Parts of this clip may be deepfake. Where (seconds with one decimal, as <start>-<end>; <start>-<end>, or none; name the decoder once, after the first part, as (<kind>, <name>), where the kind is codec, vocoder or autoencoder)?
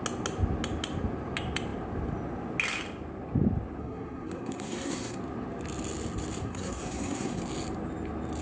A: 3.8-5.2 (codec, SNAC); 6.4-7.4